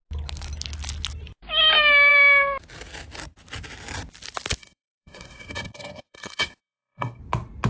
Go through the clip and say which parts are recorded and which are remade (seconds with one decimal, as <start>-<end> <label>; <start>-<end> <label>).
0.0-4.6 recorded; 4.6-7.2 remade; 7.2-7.7 recorded